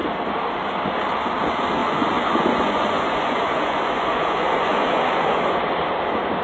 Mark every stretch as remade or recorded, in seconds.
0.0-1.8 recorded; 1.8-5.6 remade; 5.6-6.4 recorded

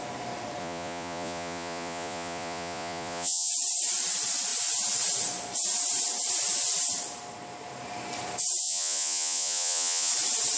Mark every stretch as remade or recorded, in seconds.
0.0-0.6 recorded; 0.6-3.5 remade; 3.5-8.6 recorded; 8.6-10.1 remade; 10.1-10.6 recorded

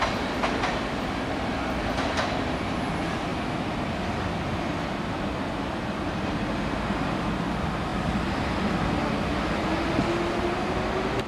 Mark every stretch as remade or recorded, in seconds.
0.0-11.3 recorded